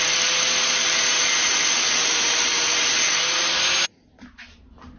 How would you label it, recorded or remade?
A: recorded